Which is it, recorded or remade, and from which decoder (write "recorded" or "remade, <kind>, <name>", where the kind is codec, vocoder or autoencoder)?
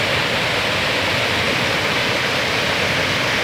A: remade, vocoder, BigVGAN v2